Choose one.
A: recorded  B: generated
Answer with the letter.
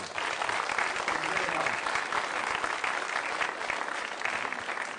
A